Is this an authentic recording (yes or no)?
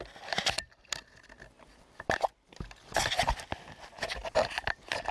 yes